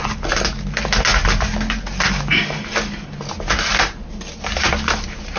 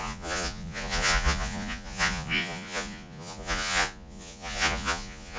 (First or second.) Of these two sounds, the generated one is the second